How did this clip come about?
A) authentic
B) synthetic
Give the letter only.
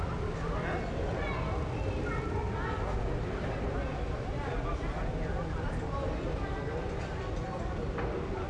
A